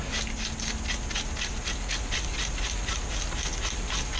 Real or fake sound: real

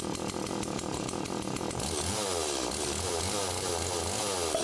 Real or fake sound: real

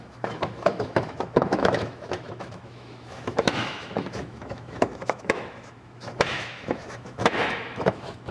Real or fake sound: fake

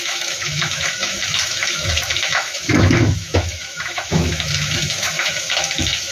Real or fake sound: fake